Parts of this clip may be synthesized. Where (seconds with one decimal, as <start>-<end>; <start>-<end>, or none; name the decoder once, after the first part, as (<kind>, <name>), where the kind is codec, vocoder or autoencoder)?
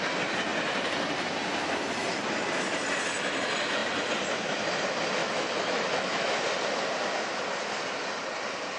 5.2-6.4 (autoencoder, DAC-VAE)